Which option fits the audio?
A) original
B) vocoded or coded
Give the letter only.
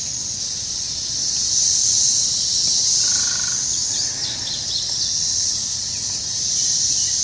A